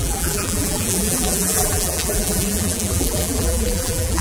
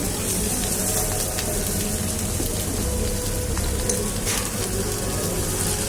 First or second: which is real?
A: second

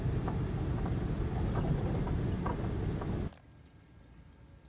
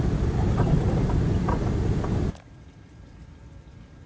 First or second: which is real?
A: first